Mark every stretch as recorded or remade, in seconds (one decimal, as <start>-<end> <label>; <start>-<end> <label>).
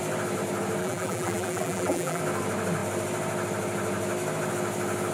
0.0-0.8 recorded; 0.8-2.2 remade; 2.2-5.1 recorded